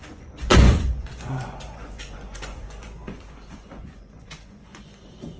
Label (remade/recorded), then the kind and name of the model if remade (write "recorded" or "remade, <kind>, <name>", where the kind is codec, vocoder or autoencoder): remade, vocoder, Vocos